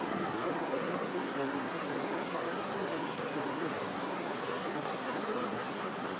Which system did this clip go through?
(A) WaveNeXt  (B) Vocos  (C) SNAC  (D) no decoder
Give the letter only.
C